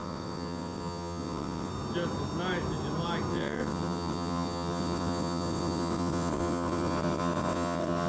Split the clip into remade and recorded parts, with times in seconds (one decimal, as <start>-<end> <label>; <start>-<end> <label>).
0.0-1.7 remade; 1.7-3.3 recorded; 3.3-8.1 remade